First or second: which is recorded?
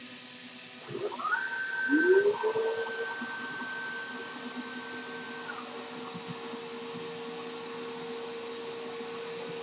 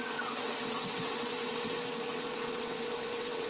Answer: first